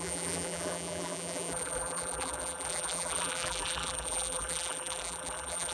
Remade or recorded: remade